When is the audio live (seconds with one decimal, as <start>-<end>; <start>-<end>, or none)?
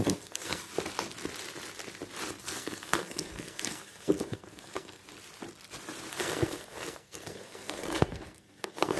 0.7-2.4; 5.0-6.1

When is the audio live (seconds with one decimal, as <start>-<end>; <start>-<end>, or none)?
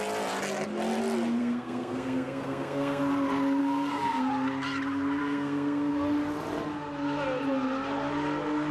0.0-1.4; 3.0-3.6; 4.3-5.2; 5.9-8.7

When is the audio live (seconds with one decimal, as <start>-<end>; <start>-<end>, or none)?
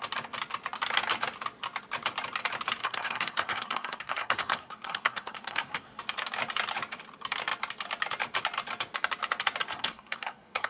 0.0-2.8; 6.0-9.7